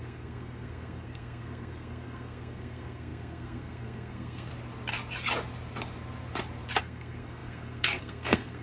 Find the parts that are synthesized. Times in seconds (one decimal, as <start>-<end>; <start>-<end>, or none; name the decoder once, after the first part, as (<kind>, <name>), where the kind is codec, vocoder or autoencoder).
0.0-4.5 (codec, SNAC); 6.8-8.6